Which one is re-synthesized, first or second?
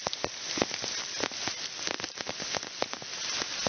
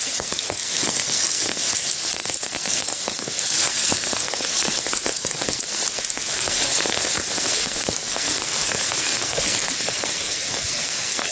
second